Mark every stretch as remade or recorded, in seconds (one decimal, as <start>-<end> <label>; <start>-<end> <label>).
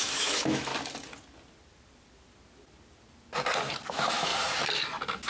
0.0-0.7 remade; 0.7-3.9 recorded; 3.9-4.3 remade; 4.3-5.3 recorded